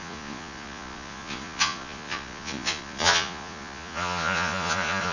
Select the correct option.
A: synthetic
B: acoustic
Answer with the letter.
A